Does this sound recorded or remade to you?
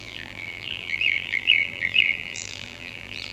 remade